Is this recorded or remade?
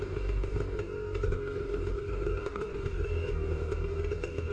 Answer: remade